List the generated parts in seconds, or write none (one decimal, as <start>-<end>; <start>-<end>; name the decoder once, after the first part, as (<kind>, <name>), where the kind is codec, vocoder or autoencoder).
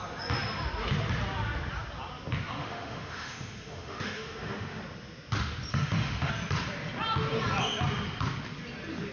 2.6-4.8 (autoencoder, DAC-VAE); 5.7-6.3